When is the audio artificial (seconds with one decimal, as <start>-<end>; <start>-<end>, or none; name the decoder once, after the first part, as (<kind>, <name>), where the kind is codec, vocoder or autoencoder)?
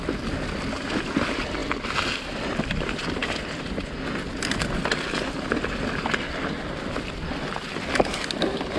none